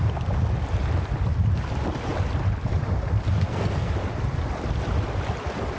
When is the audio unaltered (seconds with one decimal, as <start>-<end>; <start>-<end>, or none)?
0.0-3.3; 3.9-5.8